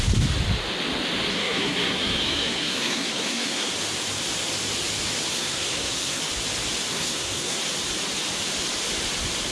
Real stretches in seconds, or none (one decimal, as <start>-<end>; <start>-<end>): 0.0-1.3; 3.7-5.3; 6.2-6.9; 7.6-9.5